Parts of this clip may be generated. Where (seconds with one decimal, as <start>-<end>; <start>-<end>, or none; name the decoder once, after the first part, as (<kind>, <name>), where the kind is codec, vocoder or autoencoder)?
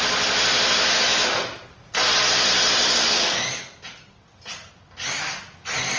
none